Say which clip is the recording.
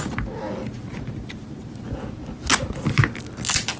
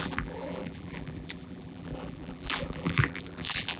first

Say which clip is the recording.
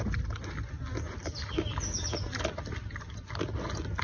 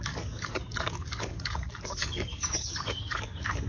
first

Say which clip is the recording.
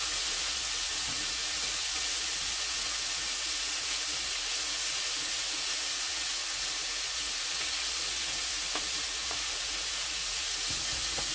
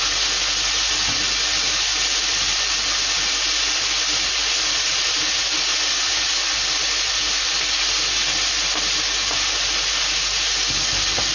second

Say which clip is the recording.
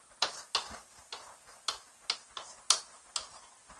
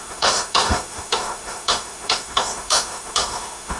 first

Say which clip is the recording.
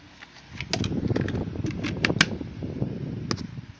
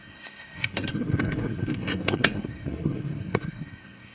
first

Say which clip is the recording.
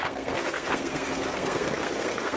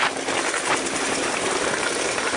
second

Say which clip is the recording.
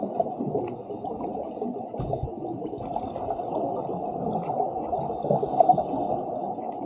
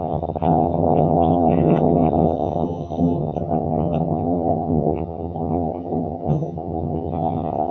first